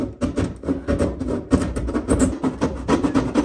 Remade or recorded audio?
recorded